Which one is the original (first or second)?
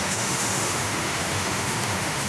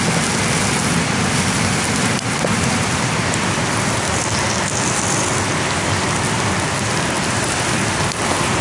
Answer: second